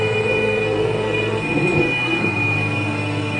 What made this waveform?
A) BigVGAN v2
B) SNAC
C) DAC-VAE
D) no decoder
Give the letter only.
B